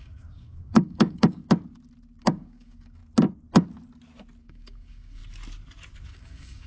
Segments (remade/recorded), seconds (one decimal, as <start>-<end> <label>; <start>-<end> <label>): 0.0-1.4 remade; 1.4-2.2 recorded; 2.2-3.0 remade; 3.0-4.4 recorded; 4.4-5.2 remade; 5.2-6.1 recorded; 6.1-6.7 remade

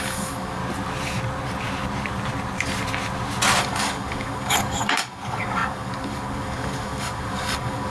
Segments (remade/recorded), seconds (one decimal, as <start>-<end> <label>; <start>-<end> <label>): 0.0-0.6 remade; 0.6-3.6 recorded; 3.6-7.9 remade

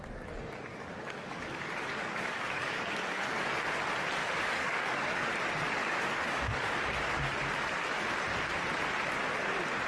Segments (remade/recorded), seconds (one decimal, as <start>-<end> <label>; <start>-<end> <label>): 0.0-0.7 recorded; 0.7-3.6 remade; 3.6-4.2 recorded; 4.2-5.3 remade; 5.3-5.8 recorded; 5.8-6.7 remade; 6.7-9.9 recorded

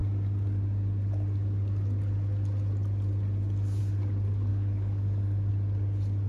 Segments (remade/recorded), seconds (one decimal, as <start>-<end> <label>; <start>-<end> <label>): 0.0-4.5 recorded; 4.5-5.5 remade; 5.5-6.3 recorded

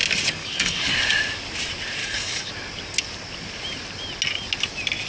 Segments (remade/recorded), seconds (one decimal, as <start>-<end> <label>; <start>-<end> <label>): 0.0-0.4 recorded; 0.4-0.9 remade; 0.9-2.0 recorded; 2.0-2.5 remade; 2.5-5.1 recorded

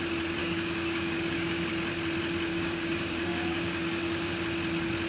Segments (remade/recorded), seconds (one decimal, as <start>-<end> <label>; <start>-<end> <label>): 0.0-0.4 recorded; 0.4-1.7 remade; 1.7-2.5 recorded; 2.5-4.3 remade; 4.3-5.1 recorded

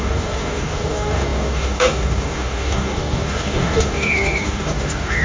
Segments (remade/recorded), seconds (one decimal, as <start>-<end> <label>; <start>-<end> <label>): 0.0-5.2 remade

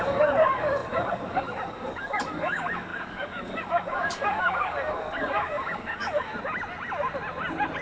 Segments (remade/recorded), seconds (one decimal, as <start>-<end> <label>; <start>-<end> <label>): 0.0-6.3 remade; 6.3-7.8 recorded